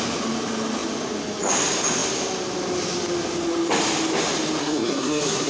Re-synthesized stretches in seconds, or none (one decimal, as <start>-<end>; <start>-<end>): 4.6-5.5